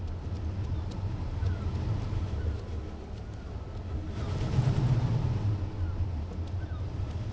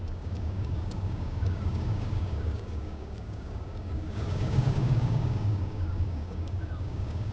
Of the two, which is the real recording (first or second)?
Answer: first